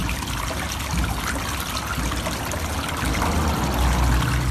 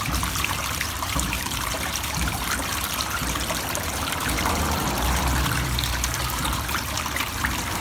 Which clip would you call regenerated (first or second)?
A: second